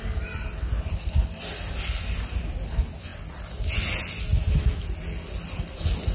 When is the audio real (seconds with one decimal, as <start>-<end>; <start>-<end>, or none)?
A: 0.0-6.1